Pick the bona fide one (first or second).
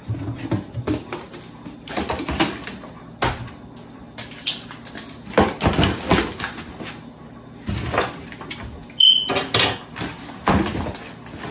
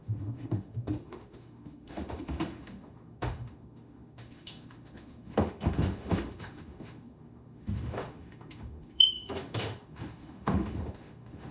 first